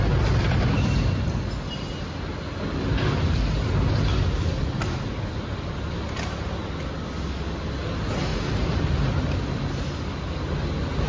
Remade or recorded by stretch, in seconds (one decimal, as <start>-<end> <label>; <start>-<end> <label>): 0.0-8.3 recorded; 8.3-9.2 remade; 9.2-11.1 recorded